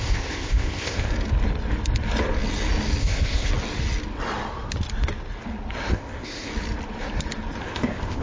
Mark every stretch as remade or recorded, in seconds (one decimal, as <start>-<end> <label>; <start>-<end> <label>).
0.0-1.1 remade; 1.1-3.0 recorded; 3.0-3.5 remade; 3.5-5.9 recorded; 5.9-6.5 remade; 6.5-7.6 recorded; 7.6-8.2 remade